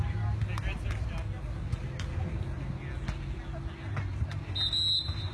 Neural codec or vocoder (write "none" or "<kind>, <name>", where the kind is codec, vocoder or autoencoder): none